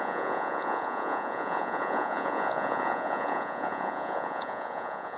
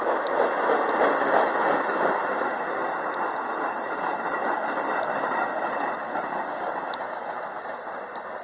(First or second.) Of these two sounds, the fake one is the first